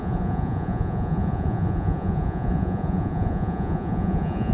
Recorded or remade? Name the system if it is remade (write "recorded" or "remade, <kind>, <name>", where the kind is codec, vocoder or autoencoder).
remade, vocoder, Vocos